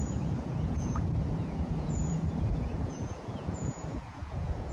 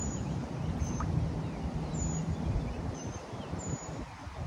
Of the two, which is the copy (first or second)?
first